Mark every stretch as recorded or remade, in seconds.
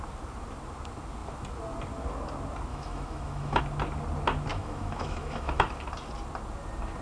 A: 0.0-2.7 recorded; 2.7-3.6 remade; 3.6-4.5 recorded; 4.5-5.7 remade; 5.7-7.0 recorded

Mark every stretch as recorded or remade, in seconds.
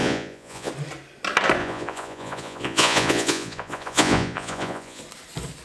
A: 0.0-0.7 remade; 0.7-1.6 recorded; 1.6-5.0 remade; 5.0-5.6 recorded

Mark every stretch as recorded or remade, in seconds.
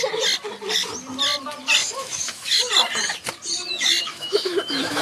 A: 0.0-1.8 recorded; 1.8-2.6 remade; 2.6-4.0 recorded; 4.0-5.0 remade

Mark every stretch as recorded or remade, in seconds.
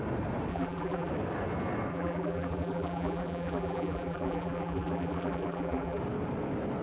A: 0.0-0.5 recorded; 0.5-1.1 remade; 1.1-1.9 recorded; 1.9-6.0 remade; 6.0-6.8 recorded